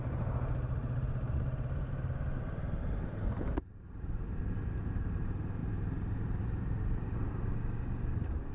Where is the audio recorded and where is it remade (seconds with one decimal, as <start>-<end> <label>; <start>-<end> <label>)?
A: 0.0-0.8 recorded; 0.8-4.4 remade; 4.4-5.6 recorded; 5.6-7.2 remade; 7.2-8.5 recorded